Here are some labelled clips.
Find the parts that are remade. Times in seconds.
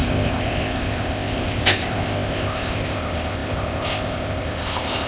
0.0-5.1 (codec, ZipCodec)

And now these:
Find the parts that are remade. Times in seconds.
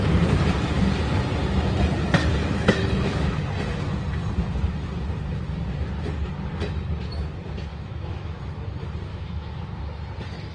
2.3-3.4 (autoencoder, DAC-VAE); 7.7-8.4; 9.1-9.8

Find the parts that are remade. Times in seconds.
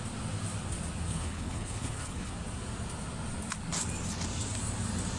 1.1-2.3 (codec, HILCodec)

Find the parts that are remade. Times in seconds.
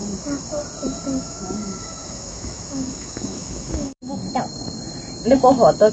1.2-4.2 (autoencoder, DAC-VAE)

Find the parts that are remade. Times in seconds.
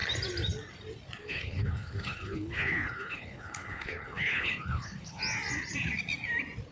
1.2-5.2 (codec, HILCodec)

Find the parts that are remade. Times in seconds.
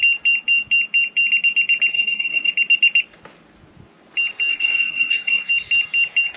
1.9-2.5 (codec, SNAC); 4.5-5.5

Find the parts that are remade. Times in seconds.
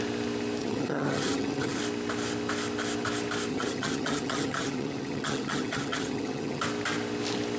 0.6-1.8 (vocoder, HiFi-GAN); 3.5-6.6